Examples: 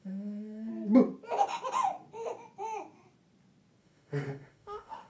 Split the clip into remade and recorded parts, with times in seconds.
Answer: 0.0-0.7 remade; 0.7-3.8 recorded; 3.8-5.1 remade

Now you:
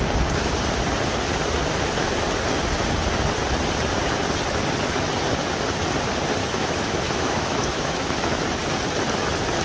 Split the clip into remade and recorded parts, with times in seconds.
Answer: 0.0-6.4 recorded; 6.4-8.4 remade; 8.4-9.6 recorded

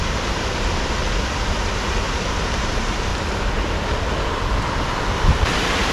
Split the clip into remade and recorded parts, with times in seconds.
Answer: 0.0-1.0 remade; 1.0-2.5 recorded; 2.5-3.1 remade; 3.1-5.2 recorded; 5.2-5.9 remade

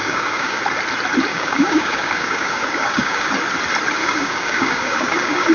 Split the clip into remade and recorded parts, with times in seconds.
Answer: 0.0-0.6 remade; 0.6-1.3 recorded; 1.3-3.3 remade; 3.3-4.0 recorded; 4.0-5.5 remade

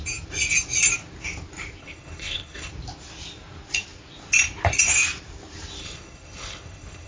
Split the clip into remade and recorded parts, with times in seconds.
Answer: 0.0-1.8 recorded; 1.8-2.7 remade; 2.7-5.8 recorded; 5.8-7.1 remade